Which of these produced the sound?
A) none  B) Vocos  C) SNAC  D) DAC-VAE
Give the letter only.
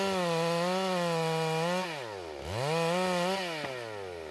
A